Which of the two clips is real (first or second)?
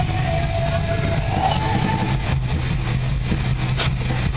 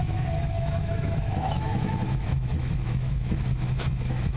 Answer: first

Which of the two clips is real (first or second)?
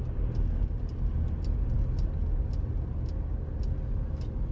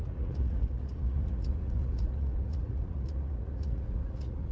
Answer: first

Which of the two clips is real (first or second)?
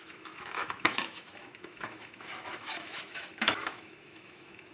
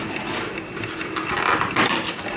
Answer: second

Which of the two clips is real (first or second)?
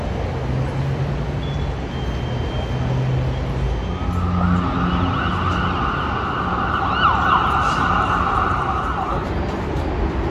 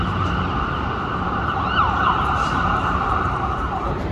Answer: first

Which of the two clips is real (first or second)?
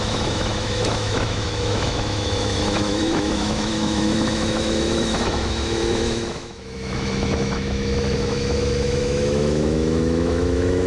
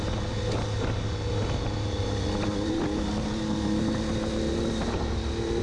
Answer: second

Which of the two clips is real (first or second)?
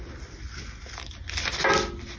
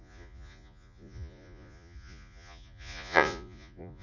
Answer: first